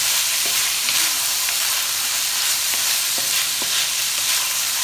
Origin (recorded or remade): remade